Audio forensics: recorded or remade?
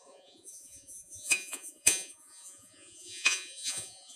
remade